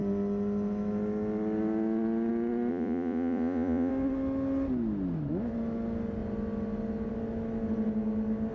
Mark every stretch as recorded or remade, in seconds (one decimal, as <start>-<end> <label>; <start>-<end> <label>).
0.0-2.7 recorded; 2.7-3.9 remade; 3.9-8.5 recorded